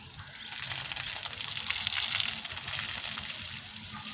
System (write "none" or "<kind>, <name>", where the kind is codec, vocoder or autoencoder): none